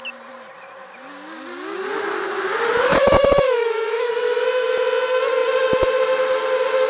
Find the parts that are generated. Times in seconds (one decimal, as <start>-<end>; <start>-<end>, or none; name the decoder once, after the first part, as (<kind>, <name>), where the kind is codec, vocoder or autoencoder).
2.9-4.1 (autoencoder, DAC-VAE)